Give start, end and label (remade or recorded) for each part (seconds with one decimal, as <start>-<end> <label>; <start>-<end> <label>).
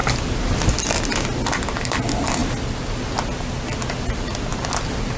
0.0-5.2 recorded